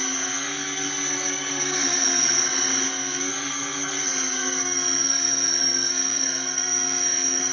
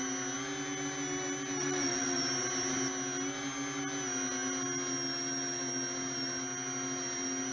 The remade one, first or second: first